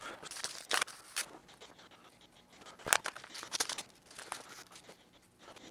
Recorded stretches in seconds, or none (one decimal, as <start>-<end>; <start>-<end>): 0.0-5.7